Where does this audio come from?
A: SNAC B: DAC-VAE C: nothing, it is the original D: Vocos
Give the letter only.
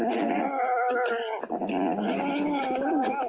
C